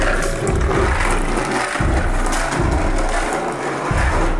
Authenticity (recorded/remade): recorded